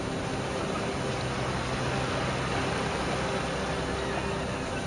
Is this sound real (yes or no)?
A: yes